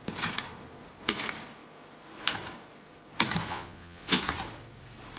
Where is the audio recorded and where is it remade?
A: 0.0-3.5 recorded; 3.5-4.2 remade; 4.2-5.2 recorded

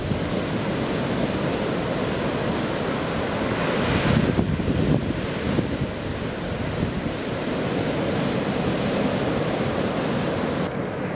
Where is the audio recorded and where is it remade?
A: 0.0-11.1 recorded

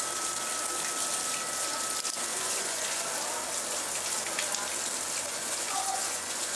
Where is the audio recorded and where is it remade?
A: 0.0-2.3 recorded; 2.3-3.0 remade; 3.0-5.3 recorded; 5.3-6.6 remade